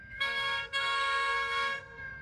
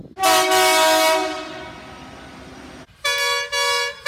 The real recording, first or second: second